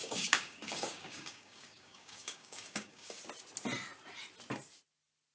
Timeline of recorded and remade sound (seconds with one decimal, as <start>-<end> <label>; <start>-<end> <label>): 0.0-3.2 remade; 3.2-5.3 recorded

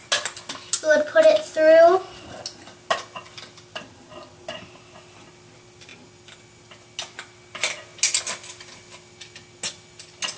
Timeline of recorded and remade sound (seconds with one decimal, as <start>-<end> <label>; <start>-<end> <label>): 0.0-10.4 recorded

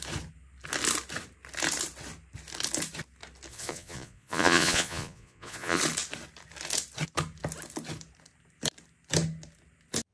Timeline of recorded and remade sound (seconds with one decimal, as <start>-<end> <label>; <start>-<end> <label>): 0.0-3.5 recorded; 3.5-5.8 remade; 5.8-10.1 recorded

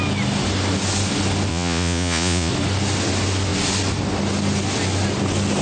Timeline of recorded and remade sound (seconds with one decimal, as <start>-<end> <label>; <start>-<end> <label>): 0.0-1.5 recorded; 1.5-2.5 remade; 2.5-5.6 recorded